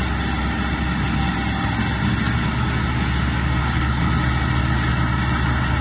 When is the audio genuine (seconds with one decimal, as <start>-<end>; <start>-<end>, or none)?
0.0-3.6; 4.1-5.8